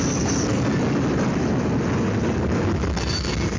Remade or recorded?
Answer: recorded